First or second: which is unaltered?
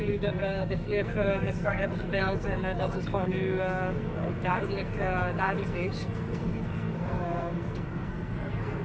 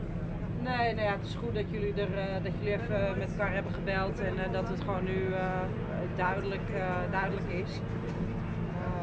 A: second